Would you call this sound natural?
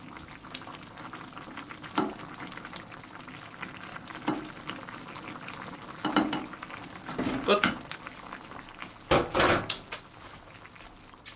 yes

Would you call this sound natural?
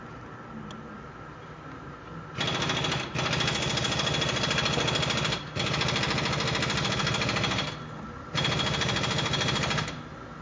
yes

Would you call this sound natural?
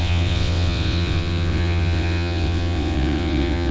no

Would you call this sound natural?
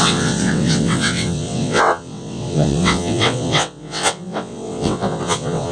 no